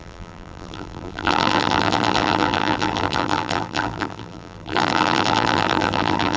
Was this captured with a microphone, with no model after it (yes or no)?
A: no